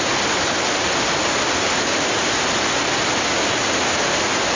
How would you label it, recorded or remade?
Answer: recorded